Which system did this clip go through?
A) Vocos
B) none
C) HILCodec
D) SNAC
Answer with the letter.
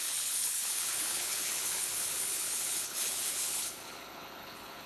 C